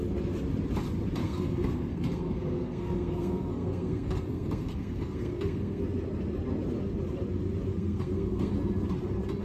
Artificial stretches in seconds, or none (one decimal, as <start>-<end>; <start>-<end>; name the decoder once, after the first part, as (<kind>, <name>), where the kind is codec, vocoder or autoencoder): 1.2-5.8 (codec, SNAC); 7.7-8.5